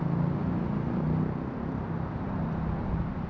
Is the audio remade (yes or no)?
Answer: no